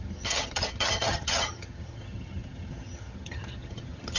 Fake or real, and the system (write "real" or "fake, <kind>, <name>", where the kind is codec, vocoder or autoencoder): fake, vocoder, HiFi-GAN